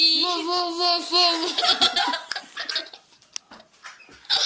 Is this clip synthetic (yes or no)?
no